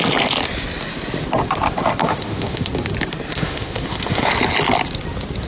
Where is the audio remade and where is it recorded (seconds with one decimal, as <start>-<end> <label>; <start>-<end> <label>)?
0.0-2.0 recorded; 2.0-2.7 remade; 2.7-3.3 recorded; 3.3-4.3 remade; 4.3-5.5 recorded